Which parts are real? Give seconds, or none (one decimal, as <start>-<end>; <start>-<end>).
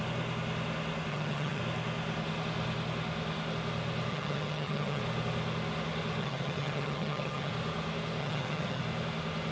0.0-1.1; 1.6-4.1; 5.0-6.2; 7.5-8.2; 8.8-9.5